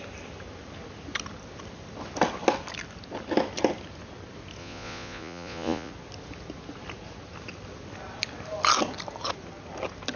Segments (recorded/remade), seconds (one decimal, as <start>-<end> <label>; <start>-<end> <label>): 0.0-4.6 recorded; 4.6-5.9 remade; 5.9-10.2 recorded

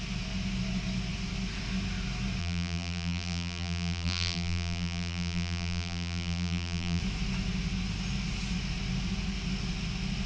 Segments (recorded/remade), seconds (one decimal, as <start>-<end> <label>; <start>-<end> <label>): 0.0-2.4 recorded; 2.4-7.0 remade; 7.0-10.3 recorded